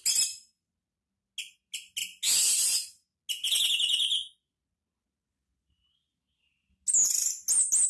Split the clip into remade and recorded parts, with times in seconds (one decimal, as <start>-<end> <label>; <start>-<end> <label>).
0.0-7.9 recorded